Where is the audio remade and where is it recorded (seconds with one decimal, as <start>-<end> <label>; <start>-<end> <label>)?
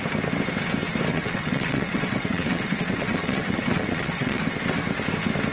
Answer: 0.0-1.1 recorded; 1.1-4.4 remade; 4.4-5.5 recorded